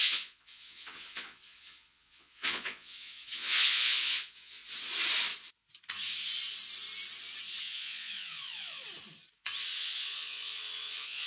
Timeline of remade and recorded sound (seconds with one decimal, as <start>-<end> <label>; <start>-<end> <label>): 0.0-4.6 remade; 4.6-7.6 recorded; 7.6-8.8 remade; 8.8-9.8 recorded; 9.8-11.3 remade